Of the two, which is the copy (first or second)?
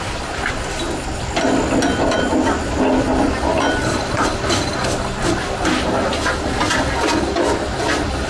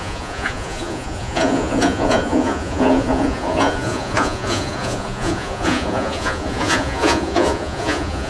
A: second